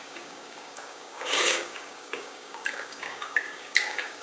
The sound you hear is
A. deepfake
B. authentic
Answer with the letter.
A